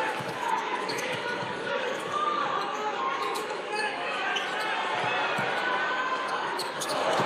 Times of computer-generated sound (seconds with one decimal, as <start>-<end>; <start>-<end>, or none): 0.0-4.3; 5.8-7.3